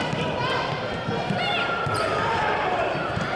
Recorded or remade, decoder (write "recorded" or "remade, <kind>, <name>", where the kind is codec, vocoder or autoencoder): remade, vocoder, BigVGAN v2